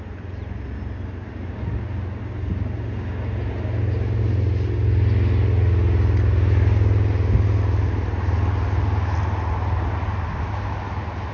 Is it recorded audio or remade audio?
recorded